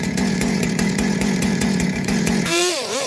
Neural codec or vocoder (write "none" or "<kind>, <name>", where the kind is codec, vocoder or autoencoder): vocoder, Vocos